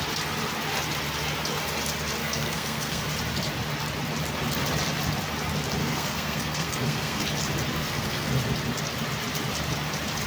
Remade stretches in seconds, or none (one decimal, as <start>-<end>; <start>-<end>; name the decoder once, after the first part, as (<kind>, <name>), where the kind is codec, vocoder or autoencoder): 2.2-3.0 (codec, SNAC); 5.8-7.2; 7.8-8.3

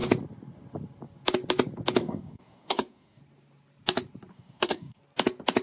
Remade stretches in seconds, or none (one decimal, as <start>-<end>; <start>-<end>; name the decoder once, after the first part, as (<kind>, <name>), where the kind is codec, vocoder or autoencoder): 2.0-3.2 (codec, SNAC); 4.3-5.0

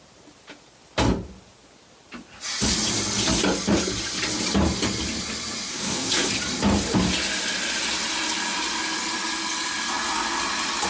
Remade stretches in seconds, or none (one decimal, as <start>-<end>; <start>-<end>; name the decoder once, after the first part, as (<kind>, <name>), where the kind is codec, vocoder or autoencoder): 5.7-6.3 (codec, SNAC)